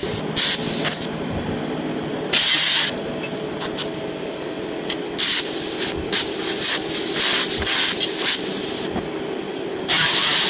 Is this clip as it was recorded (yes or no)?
yes